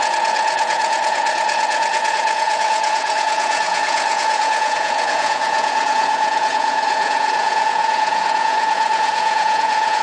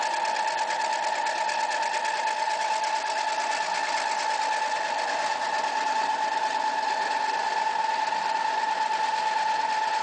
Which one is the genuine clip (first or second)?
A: second